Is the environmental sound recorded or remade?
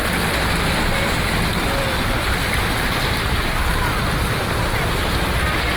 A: recorded